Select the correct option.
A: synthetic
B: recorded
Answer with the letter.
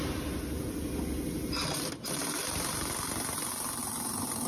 B